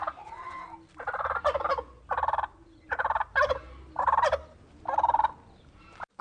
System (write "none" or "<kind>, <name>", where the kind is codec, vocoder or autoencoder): none